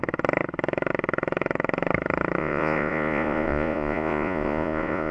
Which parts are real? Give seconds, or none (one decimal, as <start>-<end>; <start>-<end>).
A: 0.0-2.4